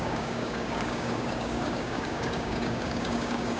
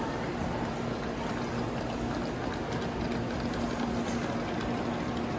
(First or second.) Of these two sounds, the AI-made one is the first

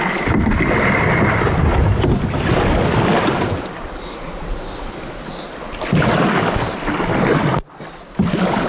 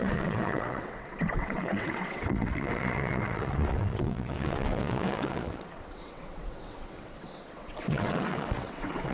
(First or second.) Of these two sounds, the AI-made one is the second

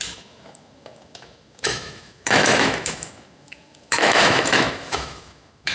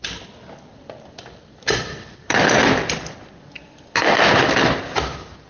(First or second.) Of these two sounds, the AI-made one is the first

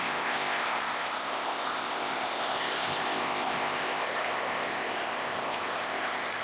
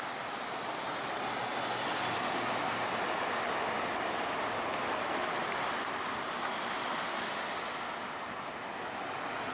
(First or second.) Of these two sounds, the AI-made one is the first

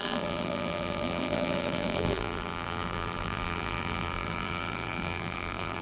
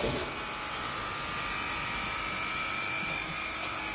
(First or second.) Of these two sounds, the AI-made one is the first